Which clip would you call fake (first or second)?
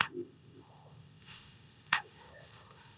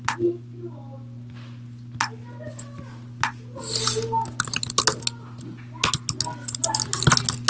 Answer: first